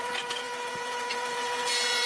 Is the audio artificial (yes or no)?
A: yes